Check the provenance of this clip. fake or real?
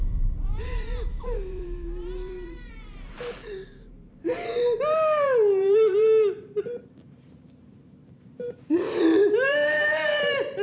fake